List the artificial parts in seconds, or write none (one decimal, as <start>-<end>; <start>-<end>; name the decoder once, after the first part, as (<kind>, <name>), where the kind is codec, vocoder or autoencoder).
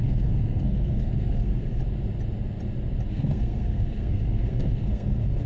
0.0-1.8 (codec, SNAC); 3.1-5.5